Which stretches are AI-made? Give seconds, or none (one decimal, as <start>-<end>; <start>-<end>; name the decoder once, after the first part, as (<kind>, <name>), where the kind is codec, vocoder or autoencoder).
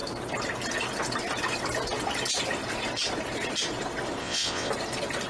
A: 4.2-4.7 (vocoder, WaveNeXt)